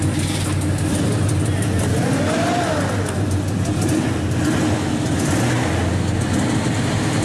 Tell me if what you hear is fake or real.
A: real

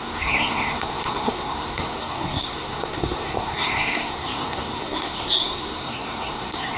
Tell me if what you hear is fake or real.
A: fake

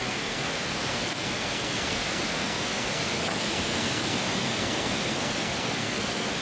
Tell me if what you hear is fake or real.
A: fake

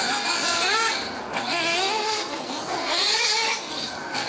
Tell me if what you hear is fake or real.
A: fake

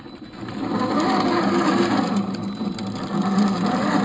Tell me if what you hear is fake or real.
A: real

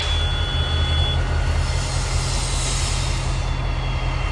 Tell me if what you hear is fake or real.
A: real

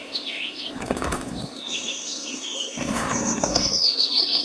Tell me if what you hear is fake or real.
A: fake